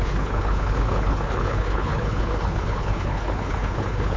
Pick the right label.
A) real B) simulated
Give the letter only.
B